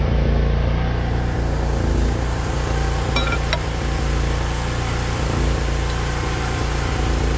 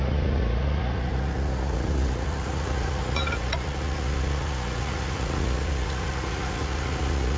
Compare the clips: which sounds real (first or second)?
first